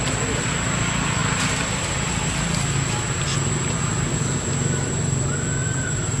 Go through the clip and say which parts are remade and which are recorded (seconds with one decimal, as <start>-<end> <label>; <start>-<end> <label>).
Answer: 0.0-6.2 recorded